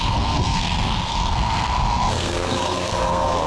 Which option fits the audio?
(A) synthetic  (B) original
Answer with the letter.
A